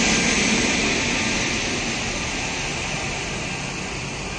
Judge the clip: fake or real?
real